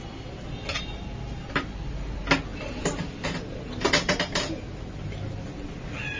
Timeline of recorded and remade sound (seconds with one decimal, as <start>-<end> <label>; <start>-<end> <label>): 0.0-6.2 recorded